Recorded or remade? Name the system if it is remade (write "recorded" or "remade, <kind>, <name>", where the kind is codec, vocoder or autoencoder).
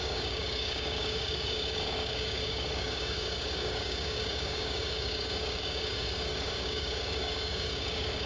remade, codec, DAC